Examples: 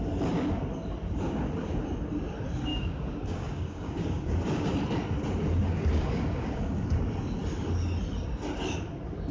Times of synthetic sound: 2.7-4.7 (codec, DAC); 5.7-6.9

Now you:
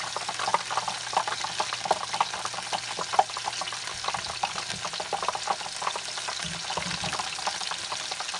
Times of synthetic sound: none